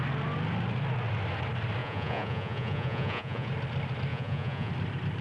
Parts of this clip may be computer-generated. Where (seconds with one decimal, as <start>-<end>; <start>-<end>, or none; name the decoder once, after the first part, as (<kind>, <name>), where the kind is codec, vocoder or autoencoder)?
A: 1.8-3.5 (vocoder, Vocos); 4.1-4.7